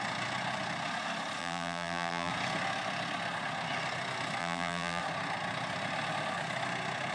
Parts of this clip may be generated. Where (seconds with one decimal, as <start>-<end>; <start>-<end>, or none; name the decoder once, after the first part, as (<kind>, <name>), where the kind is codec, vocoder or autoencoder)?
1.4-2.3 (vocoder, BigVGAN v2); 4.4-5.0